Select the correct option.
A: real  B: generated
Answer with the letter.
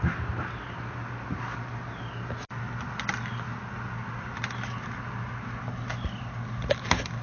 A